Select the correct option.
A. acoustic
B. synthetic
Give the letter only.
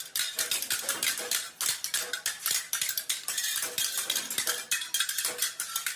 A